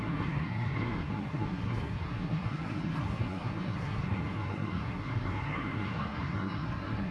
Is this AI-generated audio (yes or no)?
yes